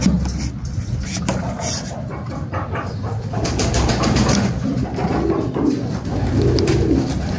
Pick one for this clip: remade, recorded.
recorded